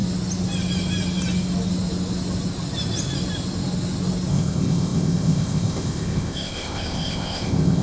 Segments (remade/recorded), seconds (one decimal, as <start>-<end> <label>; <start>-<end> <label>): 0.0-4.3 recorded; 4.3-7.8 remade